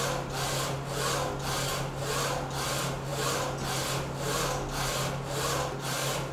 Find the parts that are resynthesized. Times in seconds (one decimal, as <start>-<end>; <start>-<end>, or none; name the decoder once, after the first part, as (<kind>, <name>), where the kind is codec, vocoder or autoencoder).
none